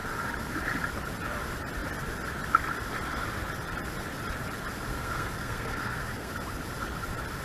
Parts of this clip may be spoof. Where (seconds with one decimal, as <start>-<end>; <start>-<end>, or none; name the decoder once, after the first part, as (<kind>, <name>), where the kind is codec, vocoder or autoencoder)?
4.9-6.3 (codec, SNAC)